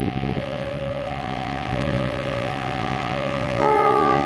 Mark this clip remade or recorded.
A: remade